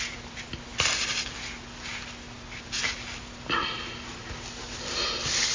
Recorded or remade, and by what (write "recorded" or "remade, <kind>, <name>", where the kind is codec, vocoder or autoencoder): recorded